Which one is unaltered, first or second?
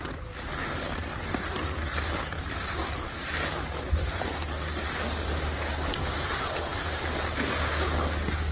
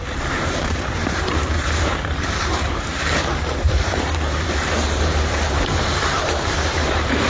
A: first